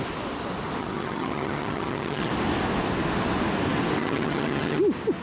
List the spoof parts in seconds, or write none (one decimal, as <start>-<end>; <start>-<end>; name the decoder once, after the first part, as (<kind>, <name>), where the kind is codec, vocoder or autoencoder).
0.8-2.3 (vocoder, HiFi-GAN); 4.0-4.8